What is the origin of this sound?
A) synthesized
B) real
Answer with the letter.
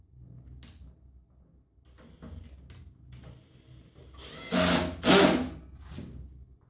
B